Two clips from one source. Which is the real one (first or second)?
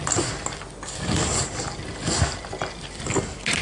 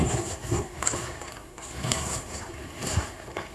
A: first